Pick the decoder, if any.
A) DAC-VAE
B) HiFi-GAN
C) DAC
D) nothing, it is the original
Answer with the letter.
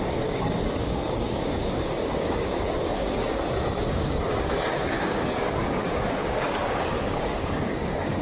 C